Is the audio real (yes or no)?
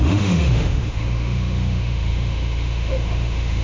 no